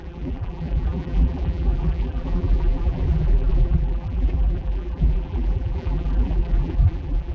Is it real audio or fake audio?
fake